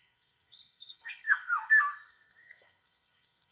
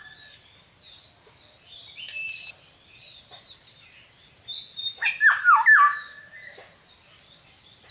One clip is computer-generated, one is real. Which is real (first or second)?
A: second